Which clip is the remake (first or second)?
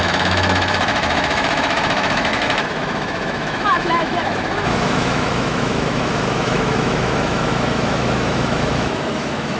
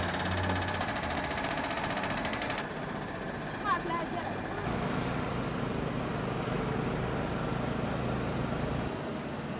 first